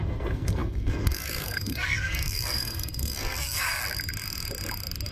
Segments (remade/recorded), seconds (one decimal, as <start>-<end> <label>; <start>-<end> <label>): 0.0-3.8 remade; 3.8-5.1 recorded